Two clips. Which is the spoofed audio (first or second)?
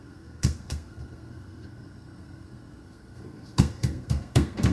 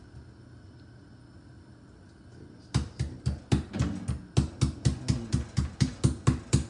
first